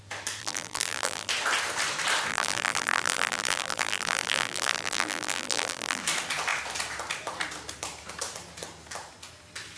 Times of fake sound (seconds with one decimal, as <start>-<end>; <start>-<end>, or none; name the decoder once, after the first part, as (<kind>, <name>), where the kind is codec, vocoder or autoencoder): 0.4-1.3 (vocoder, BigVGAN v2); 2.3-6.0